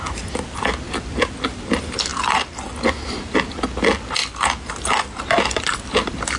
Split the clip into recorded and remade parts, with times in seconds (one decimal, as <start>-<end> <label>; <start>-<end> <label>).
0.0-6.4 recorded